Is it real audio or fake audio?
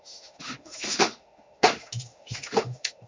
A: fake